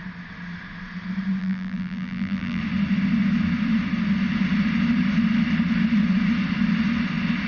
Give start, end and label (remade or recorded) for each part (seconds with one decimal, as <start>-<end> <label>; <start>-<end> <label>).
0.0-1.4 recorded; 1.4-2.6 remade; 2.6-7.5 recorded